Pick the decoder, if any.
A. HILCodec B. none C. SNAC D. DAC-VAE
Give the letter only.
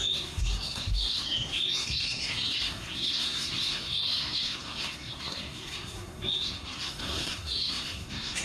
C